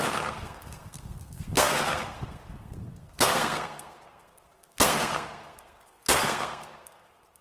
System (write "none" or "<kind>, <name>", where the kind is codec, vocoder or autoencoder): codec, SNAC